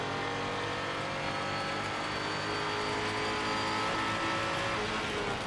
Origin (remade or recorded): recorded